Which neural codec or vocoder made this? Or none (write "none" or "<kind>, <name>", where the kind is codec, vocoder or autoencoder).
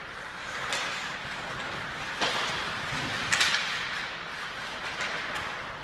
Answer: none